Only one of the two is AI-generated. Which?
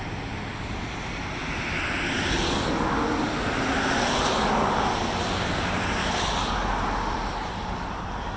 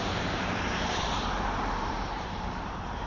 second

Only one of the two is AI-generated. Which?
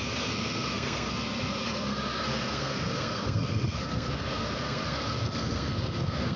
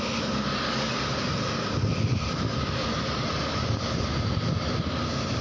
first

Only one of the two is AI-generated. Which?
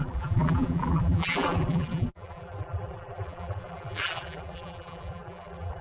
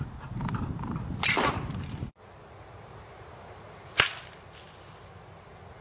first